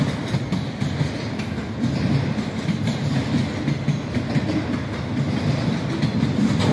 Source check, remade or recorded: recorded